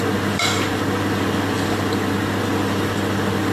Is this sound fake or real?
fake